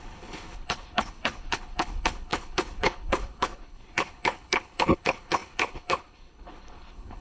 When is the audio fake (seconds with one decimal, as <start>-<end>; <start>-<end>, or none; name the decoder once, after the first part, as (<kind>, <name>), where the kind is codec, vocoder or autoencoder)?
0.0-7.2 (codec, HILCodec)